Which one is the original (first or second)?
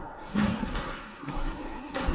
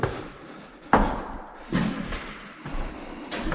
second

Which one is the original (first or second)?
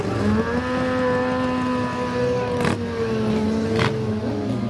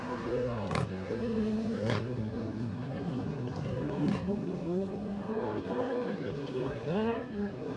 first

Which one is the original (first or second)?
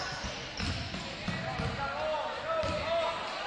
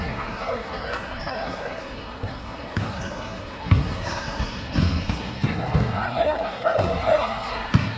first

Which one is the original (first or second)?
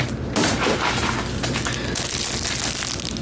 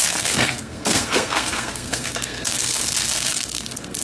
first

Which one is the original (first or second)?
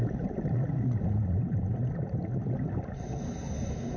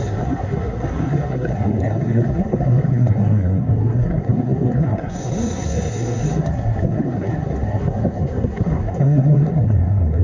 first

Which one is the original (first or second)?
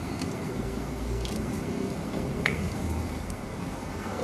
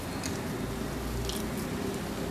second